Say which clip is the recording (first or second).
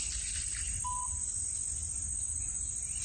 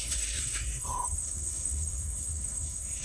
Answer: first